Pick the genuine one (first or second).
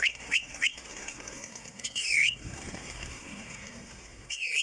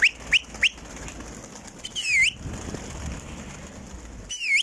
second